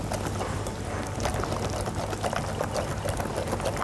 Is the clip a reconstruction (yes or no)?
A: no